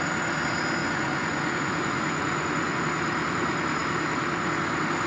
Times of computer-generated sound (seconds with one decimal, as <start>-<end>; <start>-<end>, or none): 0.8-2.8